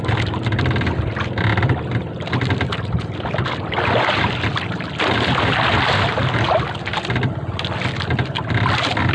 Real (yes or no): yes